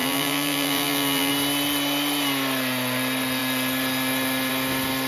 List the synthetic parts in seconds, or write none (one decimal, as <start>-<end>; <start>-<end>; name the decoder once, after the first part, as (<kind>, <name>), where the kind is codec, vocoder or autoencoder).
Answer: 0.0-1.3 (vocoder, BigVGAN v2)